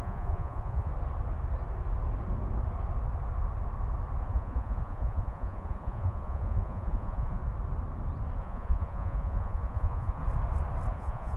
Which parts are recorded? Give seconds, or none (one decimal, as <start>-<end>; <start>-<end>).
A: 0.9-4.2; 7.4-8.4; 10.2-10.9